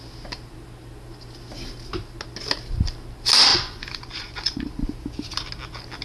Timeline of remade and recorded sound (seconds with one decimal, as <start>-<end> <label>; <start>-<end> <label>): 0.0-3.5 recorded; 3.5-4.7 remade; 4.7-6.0 recorded